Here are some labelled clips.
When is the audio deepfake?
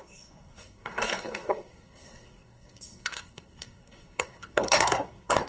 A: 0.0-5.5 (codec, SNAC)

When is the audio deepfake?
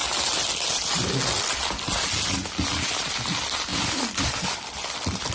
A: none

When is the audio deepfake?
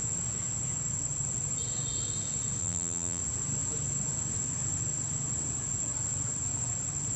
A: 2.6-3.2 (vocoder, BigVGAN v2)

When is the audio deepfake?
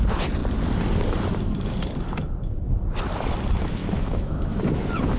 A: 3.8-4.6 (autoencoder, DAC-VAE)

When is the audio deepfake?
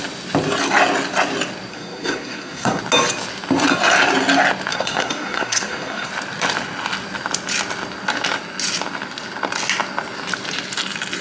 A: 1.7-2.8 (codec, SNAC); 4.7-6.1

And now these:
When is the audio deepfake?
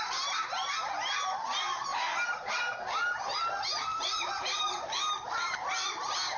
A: 3.9-5.0 (vocoder, BigVGAN v2)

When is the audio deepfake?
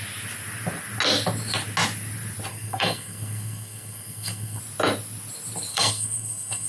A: 2.5-4.6 (codec, SNAC); 5.7-6.7